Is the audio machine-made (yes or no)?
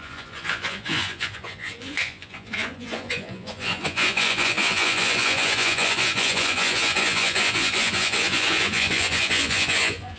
yes